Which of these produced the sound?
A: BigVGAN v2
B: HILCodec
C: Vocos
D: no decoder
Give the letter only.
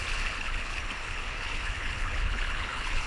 B